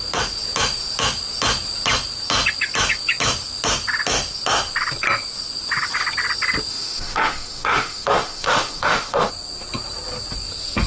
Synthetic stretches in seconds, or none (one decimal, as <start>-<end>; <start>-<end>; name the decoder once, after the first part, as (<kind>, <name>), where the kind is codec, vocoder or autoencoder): 6.7-9.3 (autoencoder, DAC-VAE)